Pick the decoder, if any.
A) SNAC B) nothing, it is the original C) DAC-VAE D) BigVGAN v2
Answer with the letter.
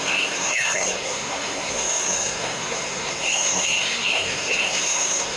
A